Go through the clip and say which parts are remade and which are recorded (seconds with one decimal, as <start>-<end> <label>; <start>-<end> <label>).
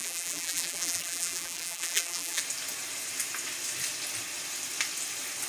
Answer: 0.0-2.4 remade; 2.4-5.5 recorded